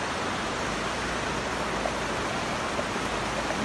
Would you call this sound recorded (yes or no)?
yes